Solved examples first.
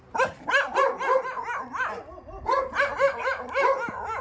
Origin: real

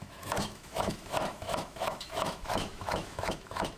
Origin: fake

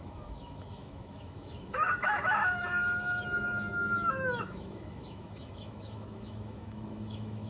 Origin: fake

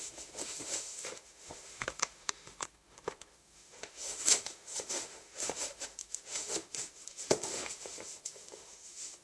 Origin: fake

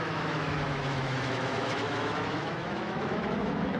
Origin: fake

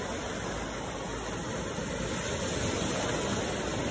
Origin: real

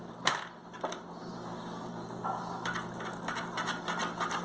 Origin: real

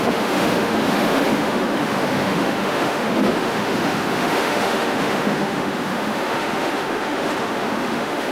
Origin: fake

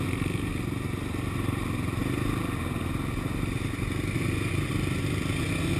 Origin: real